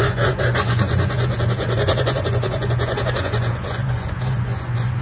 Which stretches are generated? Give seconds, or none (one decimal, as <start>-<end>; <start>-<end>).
0.0-5.0

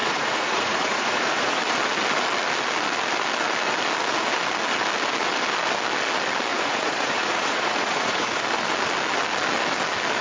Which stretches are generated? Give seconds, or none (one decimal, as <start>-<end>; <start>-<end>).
0.0-1.6; 6.5-8.4

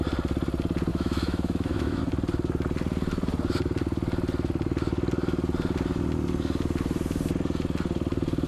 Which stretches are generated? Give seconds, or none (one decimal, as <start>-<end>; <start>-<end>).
0.9-2.0

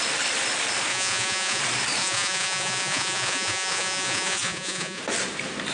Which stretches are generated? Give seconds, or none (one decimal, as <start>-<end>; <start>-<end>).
0.9-1.6; 2.0-5.0

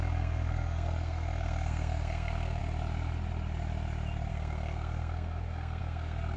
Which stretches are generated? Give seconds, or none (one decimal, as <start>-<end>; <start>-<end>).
0.0-2.6; 4.3-6.4

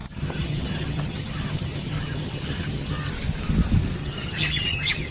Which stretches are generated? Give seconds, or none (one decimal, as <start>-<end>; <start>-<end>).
0.0-3.1; 4.0-5.1